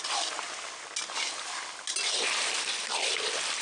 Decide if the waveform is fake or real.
real